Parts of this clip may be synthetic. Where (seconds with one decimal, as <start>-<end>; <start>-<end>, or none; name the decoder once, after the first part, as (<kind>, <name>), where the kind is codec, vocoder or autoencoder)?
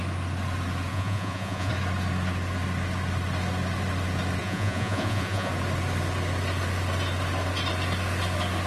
0.9-1.7 (vocoder, Vocos); 4.4-5.5